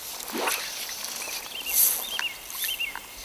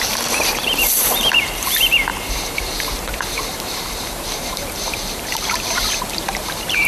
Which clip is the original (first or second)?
first